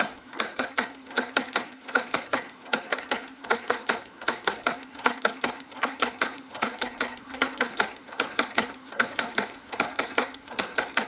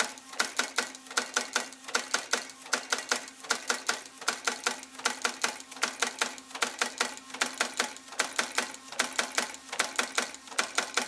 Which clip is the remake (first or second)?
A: first